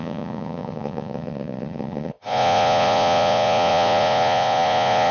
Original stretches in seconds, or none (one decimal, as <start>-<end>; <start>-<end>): none